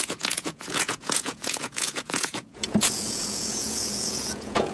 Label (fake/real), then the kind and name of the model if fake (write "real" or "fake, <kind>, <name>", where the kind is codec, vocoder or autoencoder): fake, vocoder, Vocos